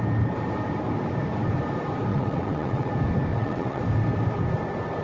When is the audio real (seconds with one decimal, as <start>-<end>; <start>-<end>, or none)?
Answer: 0.0-2.1; 2.9-3.3; 3.8-5.0